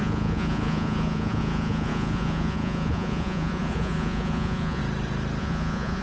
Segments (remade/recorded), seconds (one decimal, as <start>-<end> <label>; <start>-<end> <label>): 0.0-4.8 remade; 4.8-5.4 recorded; 5.4-6.0 remade